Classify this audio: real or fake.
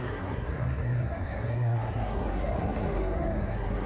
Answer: fake